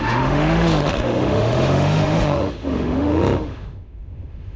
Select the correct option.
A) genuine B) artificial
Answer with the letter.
B